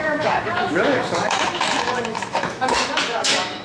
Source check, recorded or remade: remade